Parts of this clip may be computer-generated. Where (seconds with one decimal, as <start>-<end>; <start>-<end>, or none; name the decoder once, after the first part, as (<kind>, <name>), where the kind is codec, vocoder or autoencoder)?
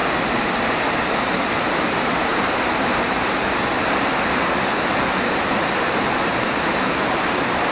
2.0-3.4 (vocoder, BigVGAN v2); 5.4-7.7